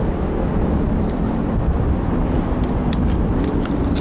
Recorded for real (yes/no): yes